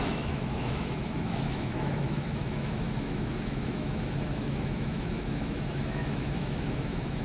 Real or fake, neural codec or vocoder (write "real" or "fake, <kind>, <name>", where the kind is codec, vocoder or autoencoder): fake, autoencoder, DAC-VAE